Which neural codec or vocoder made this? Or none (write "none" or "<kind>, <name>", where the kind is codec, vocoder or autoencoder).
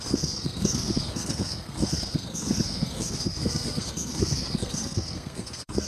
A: codec, SNAC